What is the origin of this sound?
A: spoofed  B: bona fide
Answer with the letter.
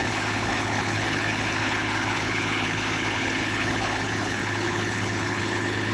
A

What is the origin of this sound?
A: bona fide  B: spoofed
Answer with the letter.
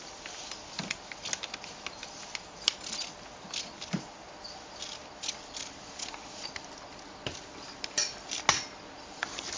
A